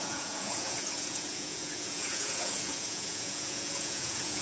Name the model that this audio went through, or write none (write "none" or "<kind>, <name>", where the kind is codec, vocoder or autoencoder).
vocoder, Vocos